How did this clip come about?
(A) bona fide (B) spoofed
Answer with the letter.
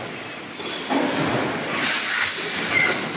B